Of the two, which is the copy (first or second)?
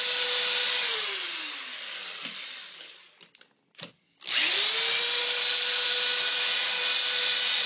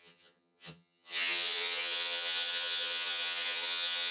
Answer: second